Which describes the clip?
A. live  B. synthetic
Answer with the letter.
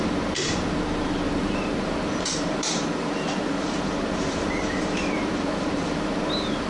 B